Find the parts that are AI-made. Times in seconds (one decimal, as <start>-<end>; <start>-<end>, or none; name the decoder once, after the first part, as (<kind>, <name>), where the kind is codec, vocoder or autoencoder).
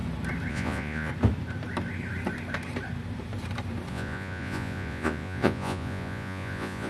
0.5-1.1 (vocoder, Vocos); 3.9-6.9